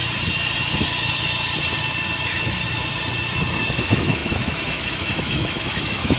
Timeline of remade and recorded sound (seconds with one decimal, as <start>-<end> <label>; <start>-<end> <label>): 0.0-3.7 recorded; 3.7-6.2 remade